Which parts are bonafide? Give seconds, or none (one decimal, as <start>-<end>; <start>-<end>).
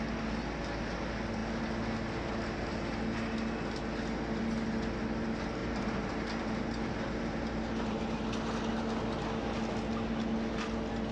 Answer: 0.0-5.6; 8.0-11.1